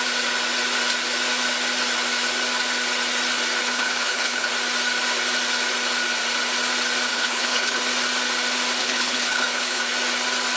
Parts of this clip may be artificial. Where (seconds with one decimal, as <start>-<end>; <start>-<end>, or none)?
3.6-4.5; 7.1-7.8; 8.8-9.8